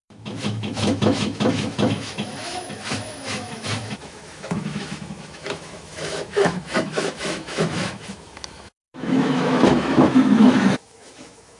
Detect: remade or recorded remade